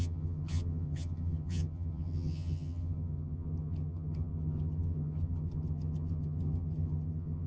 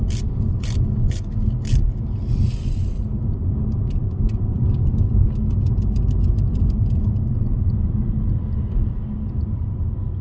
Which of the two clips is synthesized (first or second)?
first